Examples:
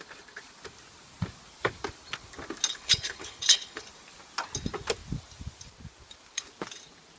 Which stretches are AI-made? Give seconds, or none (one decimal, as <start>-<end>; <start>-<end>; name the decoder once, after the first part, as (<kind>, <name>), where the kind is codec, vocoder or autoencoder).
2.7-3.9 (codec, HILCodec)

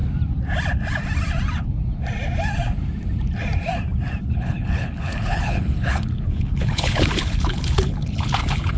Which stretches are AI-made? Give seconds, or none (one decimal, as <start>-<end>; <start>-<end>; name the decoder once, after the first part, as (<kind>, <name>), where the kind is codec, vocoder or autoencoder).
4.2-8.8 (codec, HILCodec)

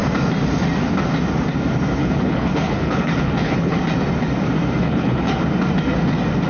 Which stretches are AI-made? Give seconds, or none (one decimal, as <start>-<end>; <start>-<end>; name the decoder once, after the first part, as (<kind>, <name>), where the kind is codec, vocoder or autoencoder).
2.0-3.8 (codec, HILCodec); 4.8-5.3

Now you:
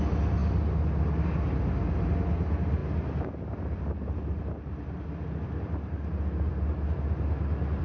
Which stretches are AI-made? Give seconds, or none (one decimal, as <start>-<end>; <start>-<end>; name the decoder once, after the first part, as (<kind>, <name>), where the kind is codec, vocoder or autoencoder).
none